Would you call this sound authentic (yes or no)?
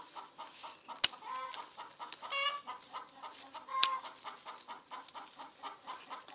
yes